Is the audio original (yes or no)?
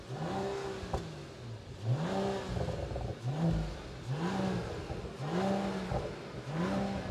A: yes